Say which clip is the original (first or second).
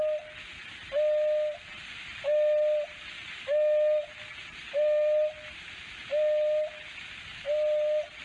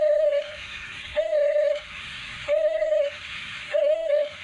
first